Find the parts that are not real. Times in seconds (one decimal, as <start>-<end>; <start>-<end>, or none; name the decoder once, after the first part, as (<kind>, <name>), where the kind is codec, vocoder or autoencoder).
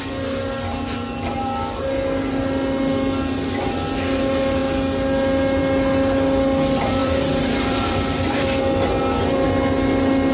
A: 7.0-8.6 (vocoder, BigVGAN v2)